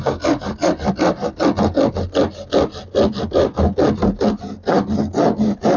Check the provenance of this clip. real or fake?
real